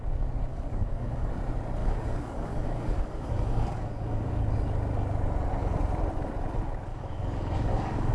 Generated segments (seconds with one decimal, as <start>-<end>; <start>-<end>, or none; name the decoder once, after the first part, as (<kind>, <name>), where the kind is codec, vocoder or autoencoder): 0.5-1.3 (codec, DAC); 1.8-4.4; 6.9-8.1